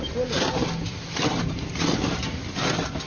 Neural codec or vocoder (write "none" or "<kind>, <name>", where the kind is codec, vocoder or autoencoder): none